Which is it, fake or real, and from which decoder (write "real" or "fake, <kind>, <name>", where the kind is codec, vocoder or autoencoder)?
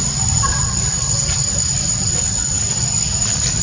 real